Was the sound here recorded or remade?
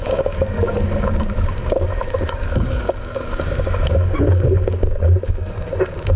remade